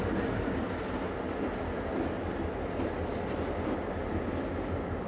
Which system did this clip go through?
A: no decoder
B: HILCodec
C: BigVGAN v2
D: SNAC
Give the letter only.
A